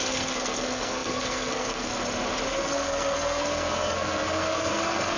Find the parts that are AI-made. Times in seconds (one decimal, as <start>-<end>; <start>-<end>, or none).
0.0-1.9; 2.5-5.2